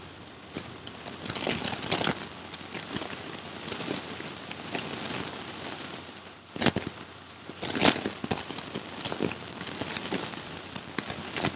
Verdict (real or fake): real